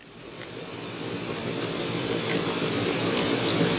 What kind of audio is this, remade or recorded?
recorded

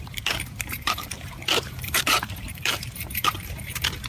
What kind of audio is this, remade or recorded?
remade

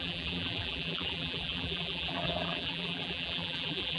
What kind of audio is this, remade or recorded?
remade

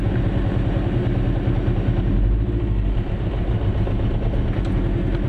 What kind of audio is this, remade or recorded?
recorded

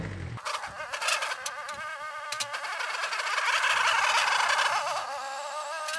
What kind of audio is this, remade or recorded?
recorded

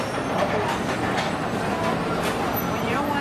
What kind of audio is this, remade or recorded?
recorded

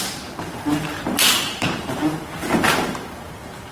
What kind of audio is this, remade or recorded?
remade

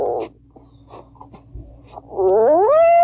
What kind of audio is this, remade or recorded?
recorded